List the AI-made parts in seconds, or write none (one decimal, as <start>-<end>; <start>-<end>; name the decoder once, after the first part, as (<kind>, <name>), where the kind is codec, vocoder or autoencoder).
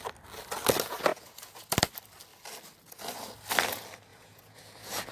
1.1-1.7 (vocoder, Vocos); 4.1-5.1